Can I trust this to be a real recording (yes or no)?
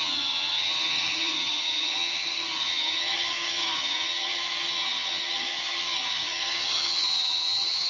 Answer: no